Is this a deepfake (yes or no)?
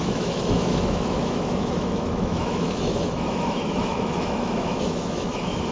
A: yes